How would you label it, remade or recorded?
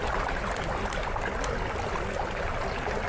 recorded